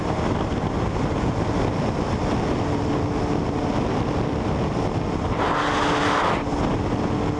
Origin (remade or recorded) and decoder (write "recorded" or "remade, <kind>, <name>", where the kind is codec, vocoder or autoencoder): recorded